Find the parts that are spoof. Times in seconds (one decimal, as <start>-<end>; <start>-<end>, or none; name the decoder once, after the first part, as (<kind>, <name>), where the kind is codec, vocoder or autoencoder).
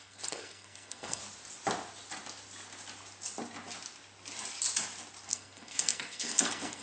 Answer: 0.0-1.2 (codec, SNAC); 5.3-6.8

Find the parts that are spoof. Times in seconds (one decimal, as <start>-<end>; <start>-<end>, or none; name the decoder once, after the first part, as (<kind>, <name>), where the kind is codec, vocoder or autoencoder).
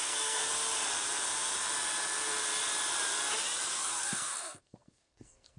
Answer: 0.0-0.4 (codec, SNAC); 3.8-5.6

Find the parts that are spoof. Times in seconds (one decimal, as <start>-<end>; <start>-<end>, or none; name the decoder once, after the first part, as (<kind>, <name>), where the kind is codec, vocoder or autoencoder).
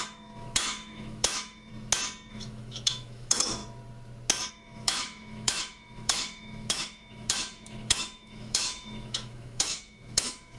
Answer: 0.0-1.7 (autoencoder, DAC-VAE); 2.3-3.6; 4.5-10.6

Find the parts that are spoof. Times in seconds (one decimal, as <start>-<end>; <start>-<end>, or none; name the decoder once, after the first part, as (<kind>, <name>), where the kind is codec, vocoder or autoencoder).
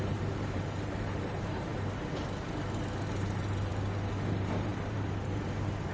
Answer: 0.0-1.7 (vocoder, BigVGAN v2); 3.0-3.7; 4.3-5.9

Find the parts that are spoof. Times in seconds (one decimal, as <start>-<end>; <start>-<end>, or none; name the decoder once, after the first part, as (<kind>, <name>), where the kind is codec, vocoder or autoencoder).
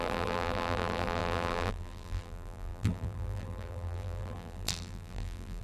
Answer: 0.0-5.6 (vocoder, BigVGAN v2)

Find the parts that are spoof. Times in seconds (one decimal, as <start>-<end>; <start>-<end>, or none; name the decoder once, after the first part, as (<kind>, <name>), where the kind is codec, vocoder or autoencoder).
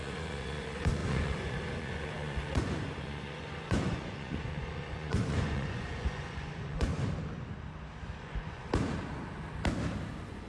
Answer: 0.0-6.9 (vocoder, Vocos); 8.2-8.7; 10.1-10.5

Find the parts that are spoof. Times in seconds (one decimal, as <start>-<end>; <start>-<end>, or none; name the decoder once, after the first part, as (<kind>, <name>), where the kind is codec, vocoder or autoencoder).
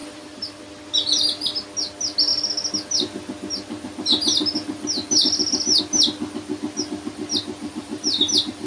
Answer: 0.0-0.6 (vocoder, BigVGAN v2); 7.6-8.7